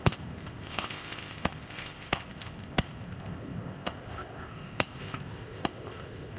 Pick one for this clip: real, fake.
fake